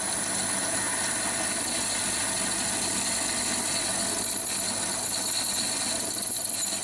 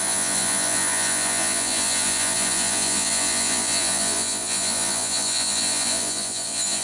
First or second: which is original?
first